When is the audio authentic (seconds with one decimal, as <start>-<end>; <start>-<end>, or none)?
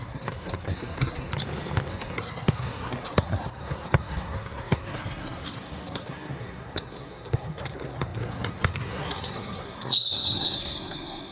1.3-1.9